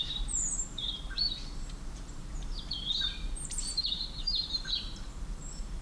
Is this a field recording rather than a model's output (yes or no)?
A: no